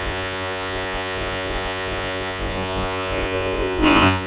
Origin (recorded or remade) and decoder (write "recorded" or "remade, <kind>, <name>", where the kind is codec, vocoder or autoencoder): remade, vocoder, Vocos